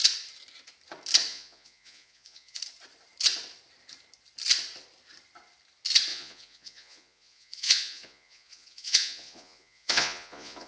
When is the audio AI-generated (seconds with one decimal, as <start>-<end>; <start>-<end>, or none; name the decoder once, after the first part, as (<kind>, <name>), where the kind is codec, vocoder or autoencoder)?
1.3-2.6 (vocoder, Vocos); 6.1-10.7